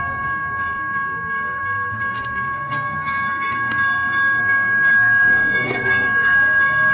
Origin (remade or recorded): remade